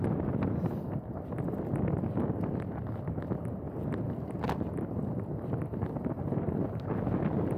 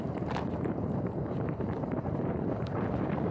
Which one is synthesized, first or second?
second